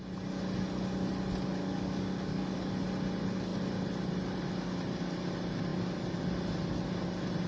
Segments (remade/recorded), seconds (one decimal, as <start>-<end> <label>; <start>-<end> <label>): 0.0-1.6 recorded; 1.6-2.7 remade; 2.7-7.5 recorded